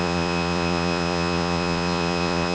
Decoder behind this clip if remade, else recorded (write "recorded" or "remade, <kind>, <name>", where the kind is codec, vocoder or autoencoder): remade, vocoder, Vocos